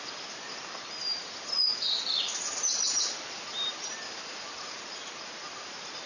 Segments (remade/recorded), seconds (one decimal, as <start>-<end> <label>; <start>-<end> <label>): 0.0-1.1 recorded; 1.1-4.8 remade; 4.8-6.1 recorded